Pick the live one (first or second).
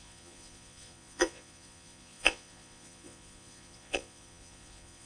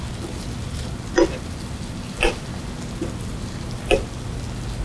second